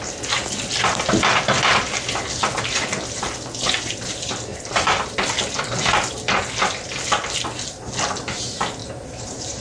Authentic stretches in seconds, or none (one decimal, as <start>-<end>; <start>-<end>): 0.0-4.5; 5.1-8.8